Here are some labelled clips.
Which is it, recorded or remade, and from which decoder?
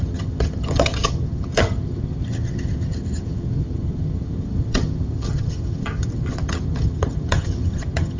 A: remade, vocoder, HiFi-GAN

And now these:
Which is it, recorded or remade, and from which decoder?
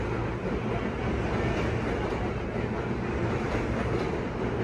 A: recorded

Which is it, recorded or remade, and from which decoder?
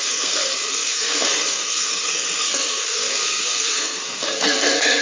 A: remade, codec, SNAC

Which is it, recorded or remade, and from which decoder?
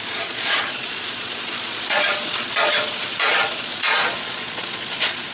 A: remade, vocoder, Vocos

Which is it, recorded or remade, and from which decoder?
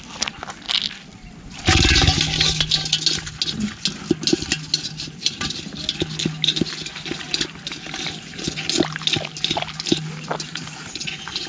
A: recorded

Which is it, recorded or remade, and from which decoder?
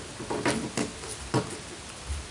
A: recorded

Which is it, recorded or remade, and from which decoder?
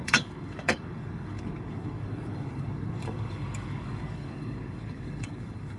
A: remade, codec, DAC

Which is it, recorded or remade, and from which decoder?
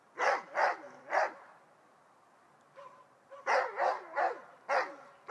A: recorded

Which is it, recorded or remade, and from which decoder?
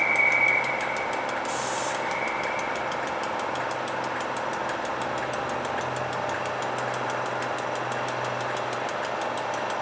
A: recorded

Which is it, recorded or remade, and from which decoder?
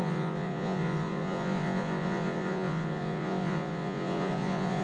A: remade, vocoder, Vocos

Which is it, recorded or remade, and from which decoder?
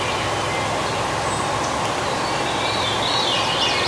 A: recorded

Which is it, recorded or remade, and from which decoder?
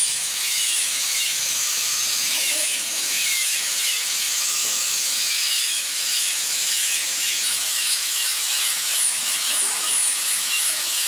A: remade, autoencoder, DAC-VAE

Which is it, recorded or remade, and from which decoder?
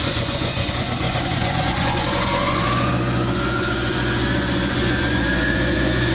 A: remade, vocoder, Vocos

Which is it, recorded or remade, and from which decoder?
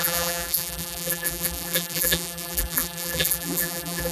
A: remade, vocoder, BigVGAN v2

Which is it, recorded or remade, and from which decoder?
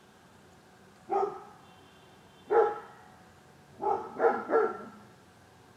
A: recorded